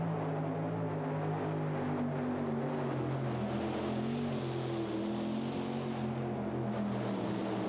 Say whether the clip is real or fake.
real